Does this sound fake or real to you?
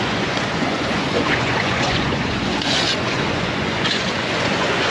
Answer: fake